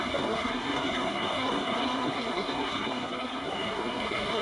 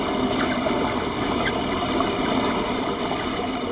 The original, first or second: second